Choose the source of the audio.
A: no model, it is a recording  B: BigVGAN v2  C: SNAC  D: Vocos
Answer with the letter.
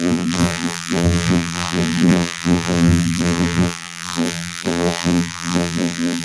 B